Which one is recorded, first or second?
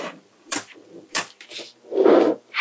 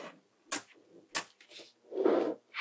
second